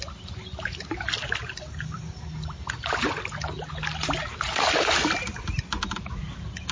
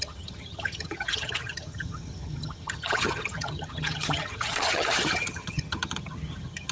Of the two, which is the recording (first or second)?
first